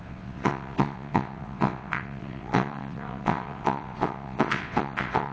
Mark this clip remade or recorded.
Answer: remade